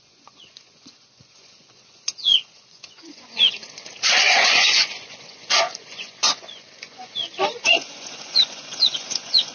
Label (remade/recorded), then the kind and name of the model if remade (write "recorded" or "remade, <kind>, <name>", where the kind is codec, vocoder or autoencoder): remade, vocoder, Vocos